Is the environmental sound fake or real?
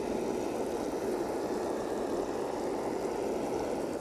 real